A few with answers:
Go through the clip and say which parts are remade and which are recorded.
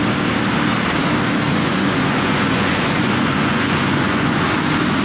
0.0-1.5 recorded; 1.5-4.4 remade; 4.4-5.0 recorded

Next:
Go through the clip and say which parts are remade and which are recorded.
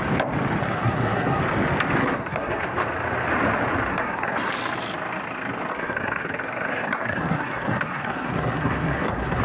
0.0-0.6 recorded; 0.6-1.4 remade; 1.4-2.0 recorded; 2.0-2.6 remade; 2.6-3.9 recorded; 3.9-4.5 remade; 4.5-5.7 recorded; 5.7-9.4 remade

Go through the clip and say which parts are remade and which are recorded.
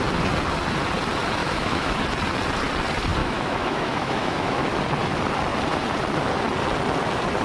0.0-1.4 recorded; 1.4-2.0 remade; 2.0-3.2 recorded; 3.2-4.8 remade; 4.8-7.4 recorded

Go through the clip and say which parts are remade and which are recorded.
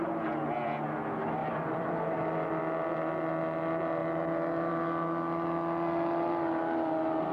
0.0-1.4 recorded; 1.4-2.5 remade; 2.5-7.3 recorded